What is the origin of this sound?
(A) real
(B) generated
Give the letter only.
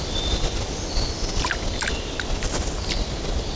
A